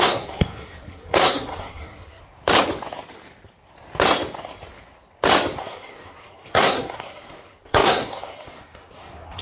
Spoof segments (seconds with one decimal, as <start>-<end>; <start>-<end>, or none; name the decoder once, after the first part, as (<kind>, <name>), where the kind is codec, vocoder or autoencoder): 0.0-2.2 (codec, SNAC); 5.6-9.4